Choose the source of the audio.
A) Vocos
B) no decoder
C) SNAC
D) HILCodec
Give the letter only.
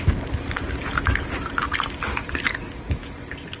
B